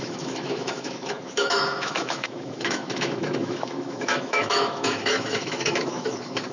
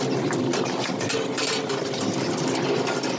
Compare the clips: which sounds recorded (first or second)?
second